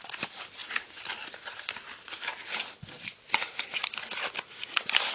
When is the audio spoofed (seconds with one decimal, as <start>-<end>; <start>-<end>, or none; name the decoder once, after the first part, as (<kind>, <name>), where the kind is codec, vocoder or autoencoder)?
0.0-0.6 (vocoder, BigVGAN v2); 1.2-2.3; 3.1-5.1